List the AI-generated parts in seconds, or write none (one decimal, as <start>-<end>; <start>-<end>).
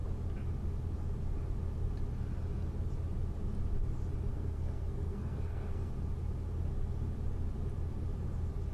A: 4.3-5.9